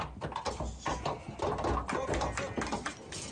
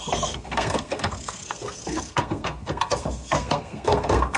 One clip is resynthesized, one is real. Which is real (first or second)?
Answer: first